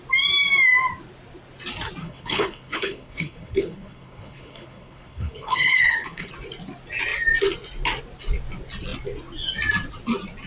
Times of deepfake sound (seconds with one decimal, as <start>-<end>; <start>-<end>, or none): 2.0-6.3